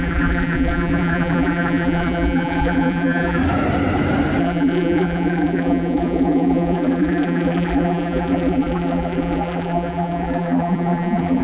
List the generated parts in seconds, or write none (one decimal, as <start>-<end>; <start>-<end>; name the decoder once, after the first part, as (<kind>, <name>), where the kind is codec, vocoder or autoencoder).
0.0-3.4 (vocoder, BigVGAN v2); 4.4-11.4